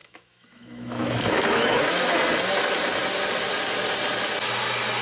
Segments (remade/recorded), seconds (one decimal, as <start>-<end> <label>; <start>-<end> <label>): 0.0-1.8 remade; 1.8-5.0 recorded